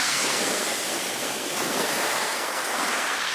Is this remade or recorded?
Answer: remade